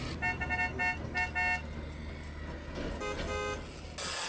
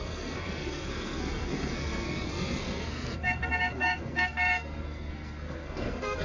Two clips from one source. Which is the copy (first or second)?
second